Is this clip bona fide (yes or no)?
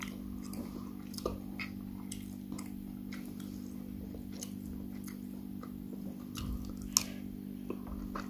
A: yes